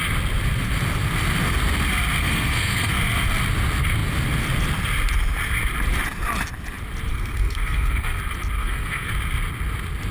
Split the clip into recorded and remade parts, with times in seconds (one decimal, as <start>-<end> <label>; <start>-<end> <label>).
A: 0.0-2.2 recorded; 2.2-2.9 remade; 2.9-7.1 recorded; 7.1-8.2 remade; 8.2-8.6 recorded; 8.6-9.1 remade; 9.1-10.1 recorded